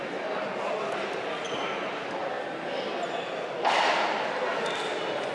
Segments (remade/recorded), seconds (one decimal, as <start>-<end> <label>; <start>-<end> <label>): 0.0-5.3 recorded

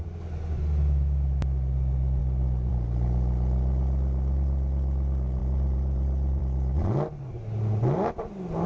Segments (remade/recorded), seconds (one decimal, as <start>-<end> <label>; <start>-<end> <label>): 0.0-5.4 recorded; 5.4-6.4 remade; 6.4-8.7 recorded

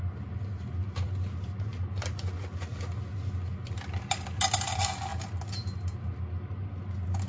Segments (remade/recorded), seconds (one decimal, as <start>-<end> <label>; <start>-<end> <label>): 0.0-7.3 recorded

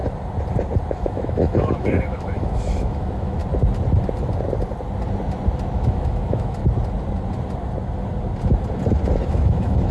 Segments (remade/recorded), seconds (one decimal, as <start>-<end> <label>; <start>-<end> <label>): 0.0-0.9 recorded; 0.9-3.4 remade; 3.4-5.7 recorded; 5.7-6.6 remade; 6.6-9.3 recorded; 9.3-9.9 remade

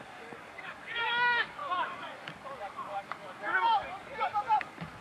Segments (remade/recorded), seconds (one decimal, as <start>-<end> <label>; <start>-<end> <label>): 0.0-5.0 remade

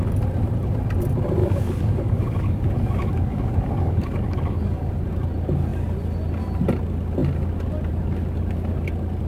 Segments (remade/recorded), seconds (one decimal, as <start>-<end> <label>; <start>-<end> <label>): 0.0-1.4 recorded; 1.4-4.9 remade; 4.9-9.3 recorded

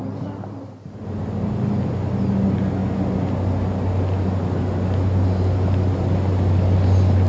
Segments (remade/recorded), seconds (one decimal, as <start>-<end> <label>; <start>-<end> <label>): 0.0-7.3 recorded